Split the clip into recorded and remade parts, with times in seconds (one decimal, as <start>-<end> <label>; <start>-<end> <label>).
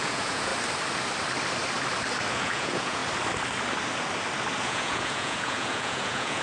0.0-0.5 remade; 0.5-2.3 recorded; 2.3-3.0 remade; 3.0-4.6 recorded; 4.6-6.4 remade